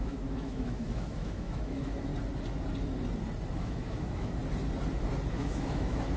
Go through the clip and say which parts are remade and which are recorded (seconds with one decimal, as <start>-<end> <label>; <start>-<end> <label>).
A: 0.0-2.1 remade; 2.1-3.5 recorded; 3.5-4.4 remade; 4.4-5.3 recorded; 5.3-6.2 remade